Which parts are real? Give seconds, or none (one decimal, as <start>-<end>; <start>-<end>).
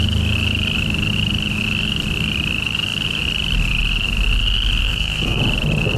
0.0-4.8; 5.4-6.0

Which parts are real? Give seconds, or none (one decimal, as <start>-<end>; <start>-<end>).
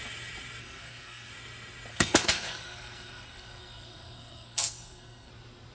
0.0-0.6; 1.3-1.9; 5.3-5.7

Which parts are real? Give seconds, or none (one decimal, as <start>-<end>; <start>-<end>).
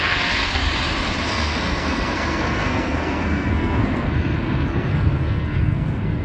0.6-1.3